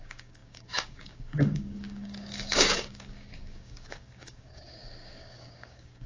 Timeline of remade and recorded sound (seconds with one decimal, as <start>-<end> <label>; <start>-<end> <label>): 0.0-6.1 remade